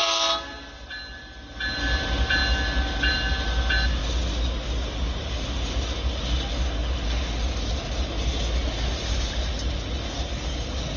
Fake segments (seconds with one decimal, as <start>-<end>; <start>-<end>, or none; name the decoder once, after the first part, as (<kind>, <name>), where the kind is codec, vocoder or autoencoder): none